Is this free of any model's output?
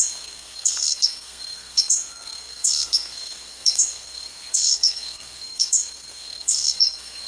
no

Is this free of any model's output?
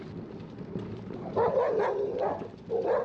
yes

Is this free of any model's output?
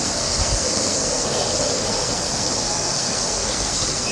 no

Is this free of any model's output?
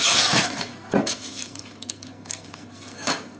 no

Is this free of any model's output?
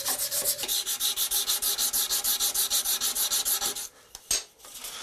yes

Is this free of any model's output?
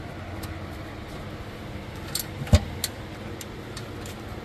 yes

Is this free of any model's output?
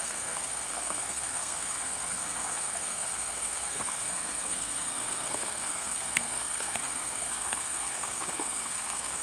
no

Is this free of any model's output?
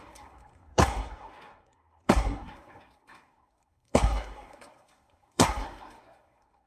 no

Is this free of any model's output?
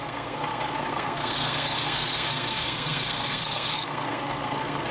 no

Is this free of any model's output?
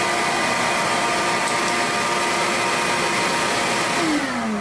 yes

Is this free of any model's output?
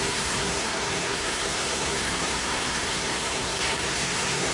no